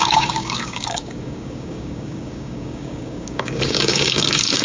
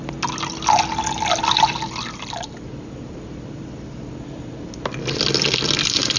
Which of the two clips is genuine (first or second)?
second